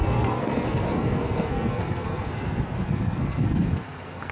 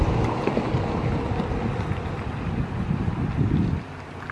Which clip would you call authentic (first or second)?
second